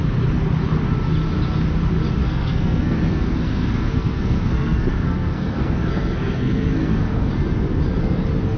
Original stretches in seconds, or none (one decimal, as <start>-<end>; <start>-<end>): 0.0-2.2; 7.3-8.6